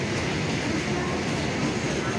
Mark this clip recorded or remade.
recorded